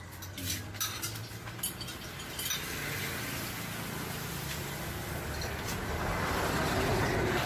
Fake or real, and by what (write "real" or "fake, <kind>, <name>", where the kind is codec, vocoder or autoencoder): real